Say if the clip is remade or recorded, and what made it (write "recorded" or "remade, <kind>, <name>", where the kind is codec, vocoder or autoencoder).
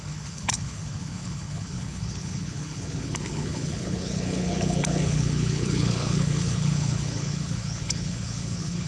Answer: remade, codec, HILCodec